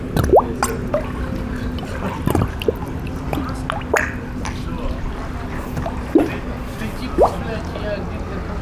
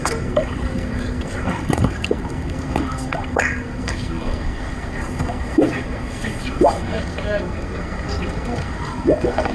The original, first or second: first